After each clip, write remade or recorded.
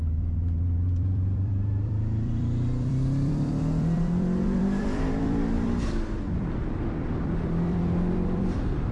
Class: remade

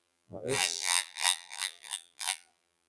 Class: remade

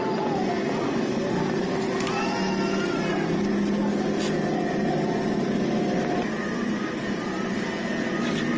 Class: recorded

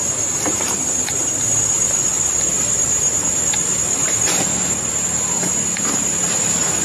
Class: recorded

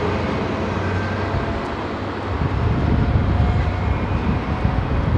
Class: recorded